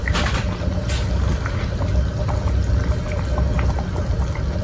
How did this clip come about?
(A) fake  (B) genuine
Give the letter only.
B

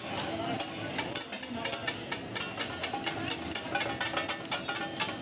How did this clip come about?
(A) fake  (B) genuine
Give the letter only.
B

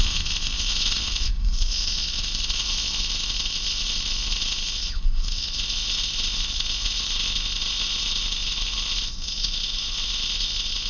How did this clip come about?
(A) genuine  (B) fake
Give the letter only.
B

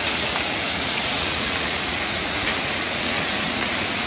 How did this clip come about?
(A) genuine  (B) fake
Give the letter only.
B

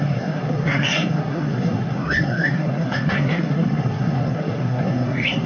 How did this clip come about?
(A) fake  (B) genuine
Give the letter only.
A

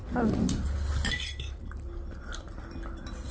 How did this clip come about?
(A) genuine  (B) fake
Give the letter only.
A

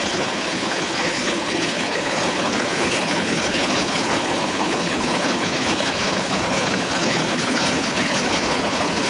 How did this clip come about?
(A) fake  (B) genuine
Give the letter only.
A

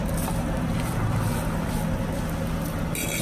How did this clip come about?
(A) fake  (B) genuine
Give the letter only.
B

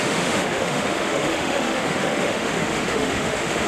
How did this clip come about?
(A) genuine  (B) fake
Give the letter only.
B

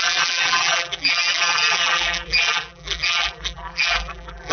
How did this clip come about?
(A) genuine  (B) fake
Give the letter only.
B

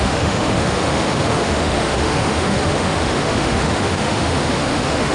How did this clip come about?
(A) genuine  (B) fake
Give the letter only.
B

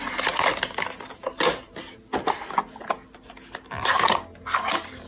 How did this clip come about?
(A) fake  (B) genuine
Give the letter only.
B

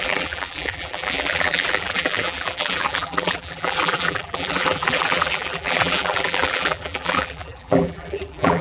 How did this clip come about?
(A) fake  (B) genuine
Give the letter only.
A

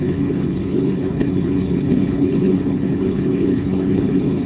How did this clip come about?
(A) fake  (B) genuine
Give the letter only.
A